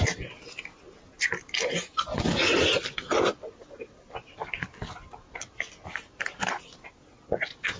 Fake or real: real